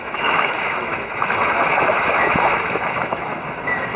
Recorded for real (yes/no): no